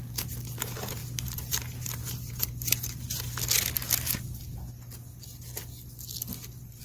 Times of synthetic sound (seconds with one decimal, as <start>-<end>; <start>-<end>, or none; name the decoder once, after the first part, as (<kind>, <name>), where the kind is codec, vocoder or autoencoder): 1.0-2.4 (vocoder, BigVGAN v2)